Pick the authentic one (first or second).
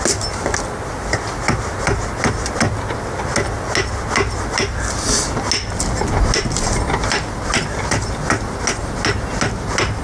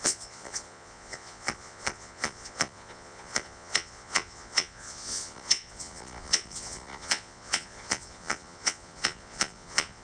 first